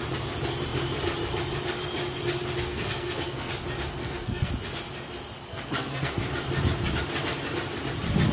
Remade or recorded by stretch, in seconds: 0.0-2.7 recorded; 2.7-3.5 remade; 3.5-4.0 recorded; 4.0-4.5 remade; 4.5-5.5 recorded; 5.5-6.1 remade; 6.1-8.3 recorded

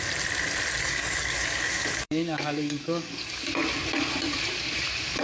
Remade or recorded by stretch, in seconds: 0.0-0.8 recorded; 0.8-3.5 remade; 3.5-5.2 recorded

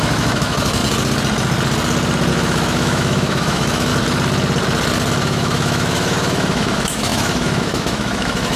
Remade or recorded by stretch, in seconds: 0.0-0.8 remade; 0.8-2.3 recorded; 2.3-3.9 remade; 3.9-5.2 recorded; 5.2-8.6 remade

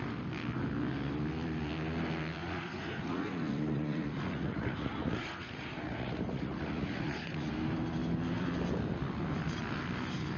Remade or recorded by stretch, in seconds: 0.0-2.4 recorded; 2.4-7.5 remade; 7.5-10.4 recorded